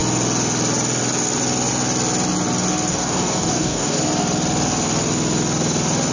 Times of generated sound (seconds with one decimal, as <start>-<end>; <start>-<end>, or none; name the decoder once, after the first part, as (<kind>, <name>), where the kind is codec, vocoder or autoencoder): 2.9-4.0 (codec, DAC)